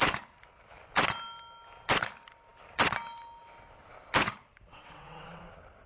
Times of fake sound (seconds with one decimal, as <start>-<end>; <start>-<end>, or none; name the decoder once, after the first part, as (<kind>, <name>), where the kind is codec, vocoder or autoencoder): 4.7-5.4 (vocoder, WaveNeXt)